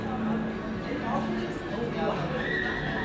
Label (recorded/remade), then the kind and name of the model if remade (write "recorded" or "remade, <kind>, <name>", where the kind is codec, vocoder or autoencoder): recorded